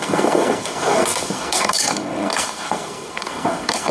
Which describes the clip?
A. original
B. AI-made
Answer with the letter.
B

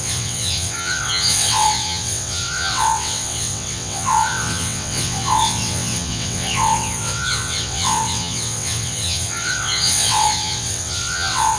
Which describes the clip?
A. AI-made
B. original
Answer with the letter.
A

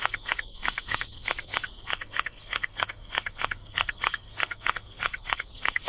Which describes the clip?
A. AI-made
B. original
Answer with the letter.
A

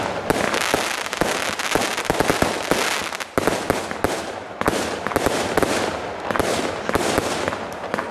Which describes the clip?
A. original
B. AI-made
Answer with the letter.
A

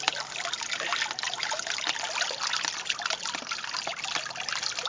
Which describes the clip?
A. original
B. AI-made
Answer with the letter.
A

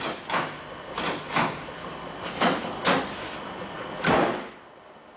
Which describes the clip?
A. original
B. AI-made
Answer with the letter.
A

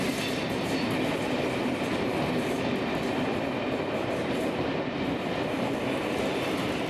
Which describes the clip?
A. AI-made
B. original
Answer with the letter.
B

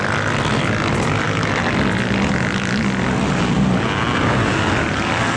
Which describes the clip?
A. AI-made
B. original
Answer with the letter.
B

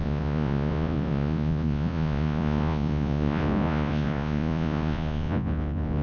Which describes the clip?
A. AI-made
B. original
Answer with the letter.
A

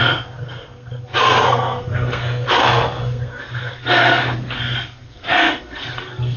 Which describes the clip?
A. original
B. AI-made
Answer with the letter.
B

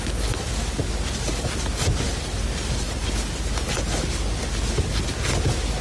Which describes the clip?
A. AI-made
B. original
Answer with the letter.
B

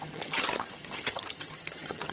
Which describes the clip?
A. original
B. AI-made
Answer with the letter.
B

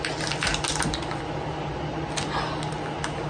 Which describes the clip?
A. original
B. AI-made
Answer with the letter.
A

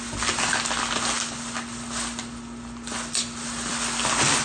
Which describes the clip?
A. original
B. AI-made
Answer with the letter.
A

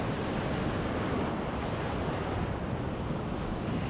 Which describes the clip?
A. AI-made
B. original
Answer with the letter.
B